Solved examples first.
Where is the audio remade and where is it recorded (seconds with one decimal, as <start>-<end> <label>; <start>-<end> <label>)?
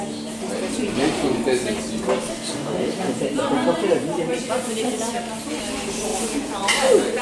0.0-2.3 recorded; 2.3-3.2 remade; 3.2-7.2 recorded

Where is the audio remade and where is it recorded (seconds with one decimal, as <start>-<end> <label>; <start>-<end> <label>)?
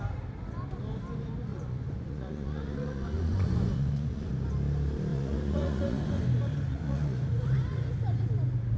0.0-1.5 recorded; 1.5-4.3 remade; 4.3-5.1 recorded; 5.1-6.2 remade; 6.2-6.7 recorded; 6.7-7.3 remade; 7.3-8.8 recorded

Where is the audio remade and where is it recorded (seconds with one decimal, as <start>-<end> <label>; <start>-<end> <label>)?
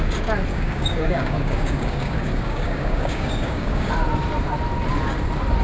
0.0-0.5 recorded; 0.5-3.9 remade; 3.9-5.6 recorded